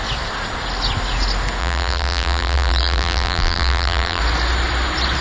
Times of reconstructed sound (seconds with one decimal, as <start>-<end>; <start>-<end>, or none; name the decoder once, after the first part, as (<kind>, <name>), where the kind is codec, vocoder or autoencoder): 1.6-4.2 (vocoder, BigVGAN v2)